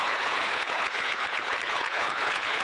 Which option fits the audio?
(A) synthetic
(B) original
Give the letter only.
A